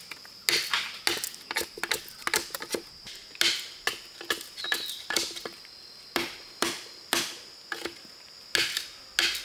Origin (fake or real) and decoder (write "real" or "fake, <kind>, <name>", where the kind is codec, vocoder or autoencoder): real